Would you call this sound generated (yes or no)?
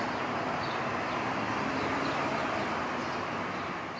no